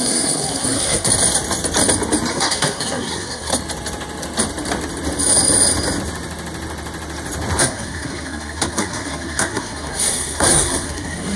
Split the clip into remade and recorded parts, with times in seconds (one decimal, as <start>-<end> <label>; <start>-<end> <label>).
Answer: 0.0-1.1 remade; 1.1-2.3 recorded; 2.3-3.5 remade; 3.5-7.6 recorded; 7.6-11.4 remade